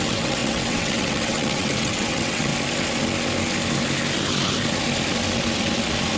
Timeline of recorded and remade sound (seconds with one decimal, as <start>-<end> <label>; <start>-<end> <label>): 0.0-2.5 remade; 2.5-6.2 recorded

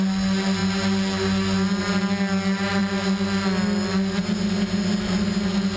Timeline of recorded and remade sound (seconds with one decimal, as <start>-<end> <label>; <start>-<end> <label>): 0.0-5.8 recorded

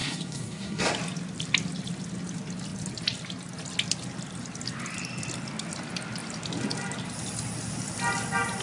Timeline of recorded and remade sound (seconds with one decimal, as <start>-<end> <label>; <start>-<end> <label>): 0.0-0.9 remade; 0.9-8.6 recorded

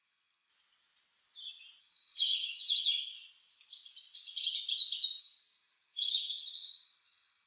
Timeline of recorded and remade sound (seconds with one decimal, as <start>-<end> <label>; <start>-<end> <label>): 0.0-0.5 remade; 0.5-1.8 recorded; 1.8-3.1 remade; 3.1-5.2 recorded; 5.2-7.5 remade

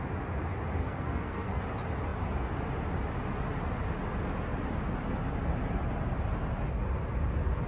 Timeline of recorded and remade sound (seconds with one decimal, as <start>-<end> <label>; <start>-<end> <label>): 0.0-0.8 recorded; 0.8-1.6 remade; 1.6-7.7 recorded

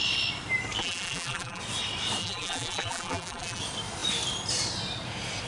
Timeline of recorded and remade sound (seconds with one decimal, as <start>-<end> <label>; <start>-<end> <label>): 0.0-0.8 recorded; 0.8-1.6 remade; 1.6-2.2 recorded; 2.2-3.6 remade; 3.6-5.5 recorded

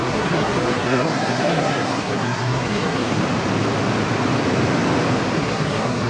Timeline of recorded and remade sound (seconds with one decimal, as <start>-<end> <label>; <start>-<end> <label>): 0.0-3.2 remade; 3.2-5.4 recorded; 5.4-6.1 remade

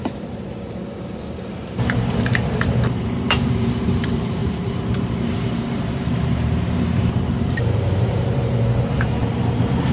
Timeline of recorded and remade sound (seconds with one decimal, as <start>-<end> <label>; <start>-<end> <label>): 0.0-8.5 remade; 8.5-9.3 recorded; 9.3-9.9 remade